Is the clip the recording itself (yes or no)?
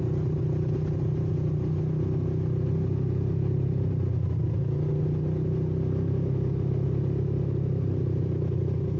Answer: yes